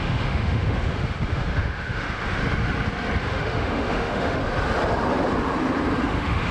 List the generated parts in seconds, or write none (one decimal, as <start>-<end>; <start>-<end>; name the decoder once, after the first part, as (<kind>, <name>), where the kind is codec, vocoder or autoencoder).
0.0-2.4 (autoencoder, DAC-VAE); 3.2-4.4; 6.0-6.5